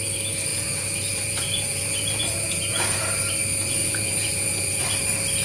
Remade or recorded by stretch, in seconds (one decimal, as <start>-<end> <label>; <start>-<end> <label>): 0.0-0.5 recorded; 0.5-3.1 remade; 3.1-3.8 recorded; 3.8-4.8 remade; 4.8-5.4 recorded